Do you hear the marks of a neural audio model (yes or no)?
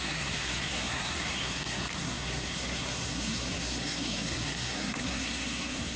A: yes